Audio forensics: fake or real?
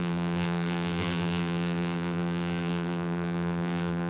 fake